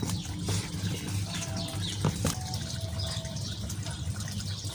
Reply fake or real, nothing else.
fake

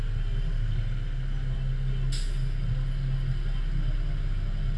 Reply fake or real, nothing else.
real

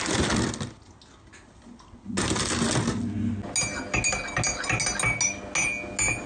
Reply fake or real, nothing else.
real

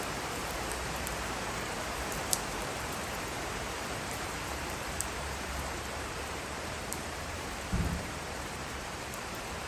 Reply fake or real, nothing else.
fake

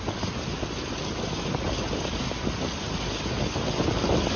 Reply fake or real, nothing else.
real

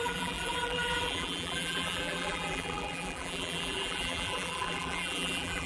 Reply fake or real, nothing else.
fake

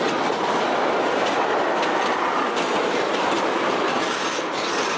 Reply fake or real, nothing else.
fake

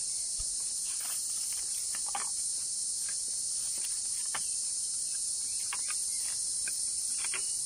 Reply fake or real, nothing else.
fake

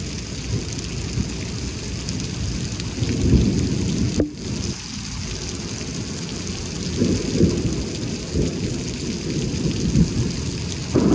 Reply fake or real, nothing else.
real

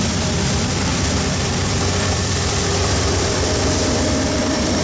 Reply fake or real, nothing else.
fake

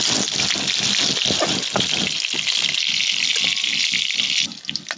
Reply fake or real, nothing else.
real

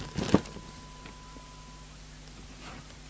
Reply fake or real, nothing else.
real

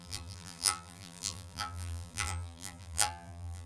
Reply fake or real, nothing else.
fake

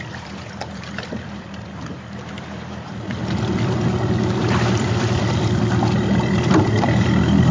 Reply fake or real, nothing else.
fake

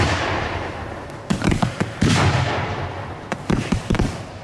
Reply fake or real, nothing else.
fake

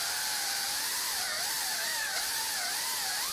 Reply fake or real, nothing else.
fake